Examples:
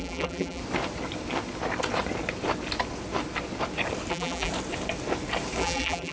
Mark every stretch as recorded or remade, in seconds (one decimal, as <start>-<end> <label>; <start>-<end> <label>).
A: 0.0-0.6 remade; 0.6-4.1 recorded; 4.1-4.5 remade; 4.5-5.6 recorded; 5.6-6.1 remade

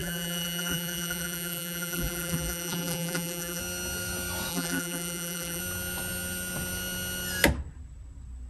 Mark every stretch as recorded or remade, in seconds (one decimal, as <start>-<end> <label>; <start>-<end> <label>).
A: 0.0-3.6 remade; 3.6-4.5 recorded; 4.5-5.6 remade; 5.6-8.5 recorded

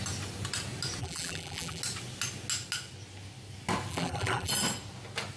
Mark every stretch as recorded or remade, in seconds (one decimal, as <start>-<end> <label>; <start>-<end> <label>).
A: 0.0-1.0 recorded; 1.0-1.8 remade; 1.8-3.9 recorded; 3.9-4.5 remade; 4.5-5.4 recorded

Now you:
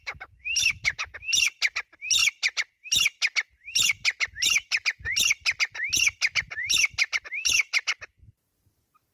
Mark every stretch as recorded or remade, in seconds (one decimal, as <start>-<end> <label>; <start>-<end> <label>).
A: 0.0-9.1 remade